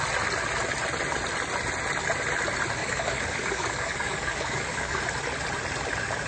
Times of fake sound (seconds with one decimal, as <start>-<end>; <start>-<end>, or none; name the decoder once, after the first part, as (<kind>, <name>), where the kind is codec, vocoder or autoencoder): 2.8-5.0 (codec, DAC)